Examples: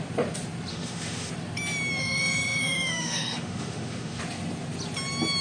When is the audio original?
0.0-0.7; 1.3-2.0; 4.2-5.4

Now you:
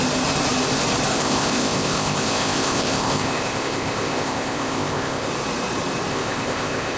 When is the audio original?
0.0-1.1; 5.3-6.1

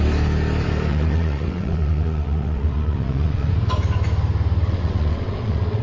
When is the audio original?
0.0-0.9; 3.5-4.6

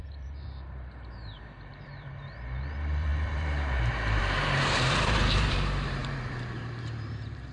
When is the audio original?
none

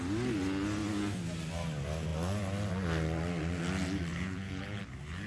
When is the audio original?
0.0-4.1; 4.8-5.3

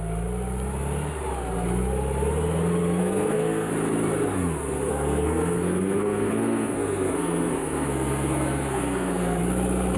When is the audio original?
0.0-3.0; 3.7-4.9; 9.4-10.0

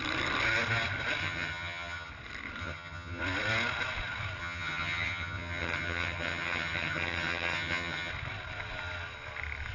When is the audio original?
0.0-1.2; 2.1-2.6; 3.2-4.4; 8.1-9.7